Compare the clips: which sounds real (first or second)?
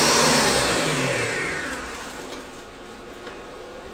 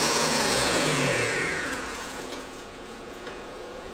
first